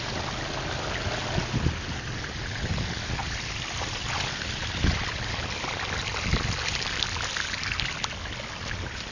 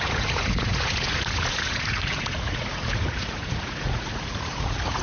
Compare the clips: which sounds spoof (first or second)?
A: second